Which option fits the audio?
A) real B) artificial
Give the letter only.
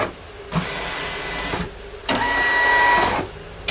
A